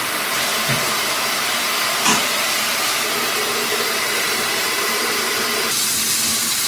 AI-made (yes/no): yes